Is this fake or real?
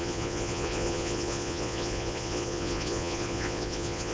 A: fake